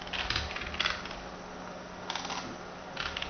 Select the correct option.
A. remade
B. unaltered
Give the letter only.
B